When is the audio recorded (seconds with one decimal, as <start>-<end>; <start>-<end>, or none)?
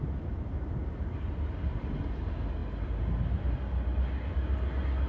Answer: 0.0-5.1